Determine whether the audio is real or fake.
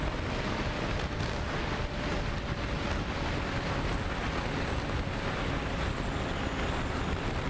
real